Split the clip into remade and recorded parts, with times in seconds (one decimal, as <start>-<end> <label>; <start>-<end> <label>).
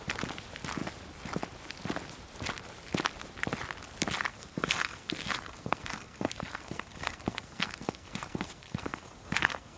0.0-4.3 recorded; 4.3-9.8 remade